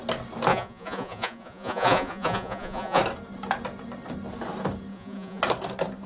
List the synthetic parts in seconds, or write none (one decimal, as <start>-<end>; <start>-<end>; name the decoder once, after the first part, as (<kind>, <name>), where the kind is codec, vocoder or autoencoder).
0.5-3.0 (vocoder, Vocos); 4.9-5.4